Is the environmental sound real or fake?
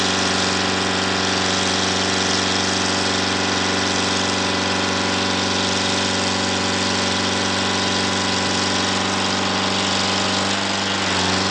real